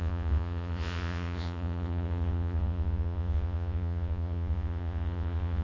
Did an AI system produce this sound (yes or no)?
yes